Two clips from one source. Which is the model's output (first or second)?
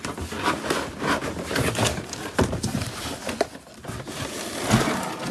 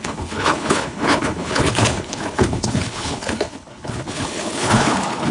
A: second